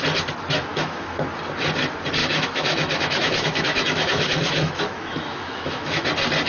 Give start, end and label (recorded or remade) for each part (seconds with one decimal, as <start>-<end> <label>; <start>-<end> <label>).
0.0-0.7 recorded; 0.7-1.2 remade; 1.2-2.2 recorded; 2.2-6.1 remade; 6.1-6.5 recorded